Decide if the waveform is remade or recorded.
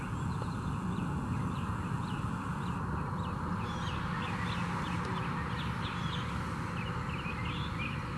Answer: recorded